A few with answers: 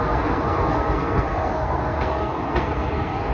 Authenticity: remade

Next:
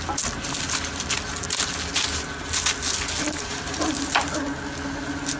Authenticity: recorded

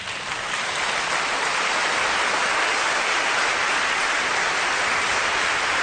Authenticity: recorded